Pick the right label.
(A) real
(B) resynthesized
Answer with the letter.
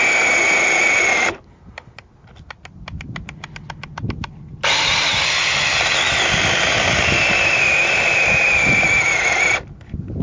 A